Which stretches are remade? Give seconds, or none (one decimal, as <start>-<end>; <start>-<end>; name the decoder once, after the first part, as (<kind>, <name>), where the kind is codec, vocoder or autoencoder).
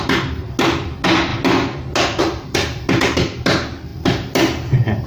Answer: none